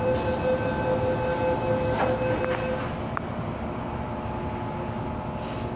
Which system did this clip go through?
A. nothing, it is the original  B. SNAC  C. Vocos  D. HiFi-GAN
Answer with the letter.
A